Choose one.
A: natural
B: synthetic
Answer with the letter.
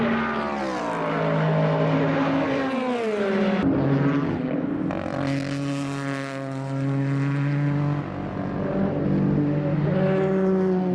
A